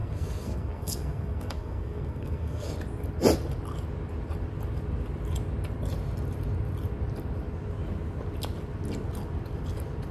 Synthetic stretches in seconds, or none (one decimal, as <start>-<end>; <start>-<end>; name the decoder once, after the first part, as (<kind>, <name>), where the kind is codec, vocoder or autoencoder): 0.0-2.7 (codec, SNAC)